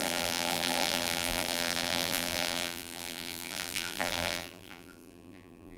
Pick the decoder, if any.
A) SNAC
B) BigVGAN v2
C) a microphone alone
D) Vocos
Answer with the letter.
B